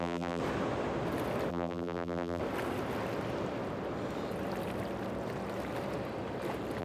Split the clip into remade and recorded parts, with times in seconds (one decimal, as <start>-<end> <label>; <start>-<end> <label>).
0.0-0.4 remade; 0.4-1.5 recorded; 1.5-2.4 remade; 2.4-6.8 recorded